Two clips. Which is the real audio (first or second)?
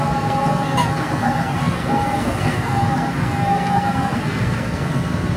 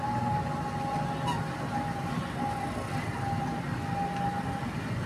second